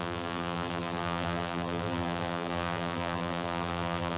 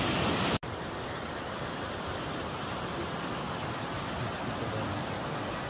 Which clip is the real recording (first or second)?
second